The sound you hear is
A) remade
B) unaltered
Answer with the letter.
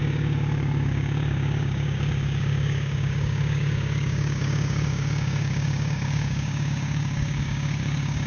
A